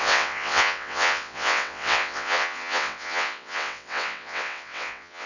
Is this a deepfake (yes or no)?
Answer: yes